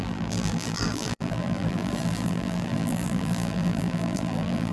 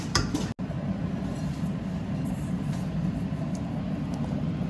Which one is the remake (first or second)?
first